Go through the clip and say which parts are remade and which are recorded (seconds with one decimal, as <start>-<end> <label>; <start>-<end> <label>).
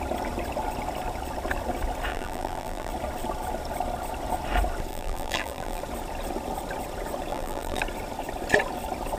0.0-2.1 recorded; 2.1-2.9 remade; 2.9-4.9 recorded; 4.9-5.8 remade; 5.8-7.3 recorded; 7.3-7.8 remade; 7.8-9.2 recorded